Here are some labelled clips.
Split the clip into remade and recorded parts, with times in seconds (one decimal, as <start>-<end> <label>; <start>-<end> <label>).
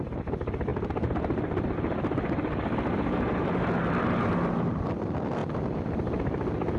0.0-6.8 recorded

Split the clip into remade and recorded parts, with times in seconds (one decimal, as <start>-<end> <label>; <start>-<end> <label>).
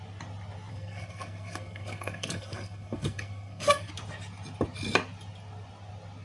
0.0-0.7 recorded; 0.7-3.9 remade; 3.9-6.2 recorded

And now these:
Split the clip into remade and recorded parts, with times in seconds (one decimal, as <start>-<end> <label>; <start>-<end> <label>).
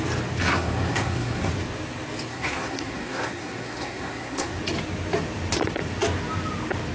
0.0-0.4 recorded; 0.4-1.5 remade; 1.5-2.3 recorded; 2.3-4.6 remade; 4.6-6.9 recorded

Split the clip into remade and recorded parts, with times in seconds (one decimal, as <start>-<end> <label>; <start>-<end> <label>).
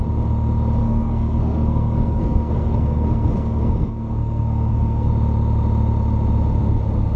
0.0-0.8 recorded; 0.8-5.1 remade; 5.1-7.2 recorded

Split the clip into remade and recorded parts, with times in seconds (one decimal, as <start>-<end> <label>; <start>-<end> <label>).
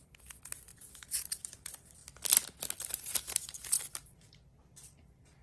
0.0-2.0 remade; 2.0-2.9 recorded; 2.9-5.4 remade